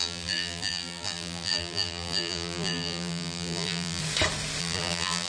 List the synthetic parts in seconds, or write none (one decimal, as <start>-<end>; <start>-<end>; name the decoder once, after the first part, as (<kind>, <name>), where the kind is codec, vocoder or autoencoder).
0.0-4.0 (vocoder, BigVGAN v2); 4.6-5.3